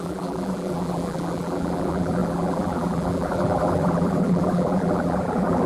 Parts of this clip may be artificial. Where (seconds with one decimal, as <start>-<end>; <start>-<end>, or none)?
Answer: 0.0-5.7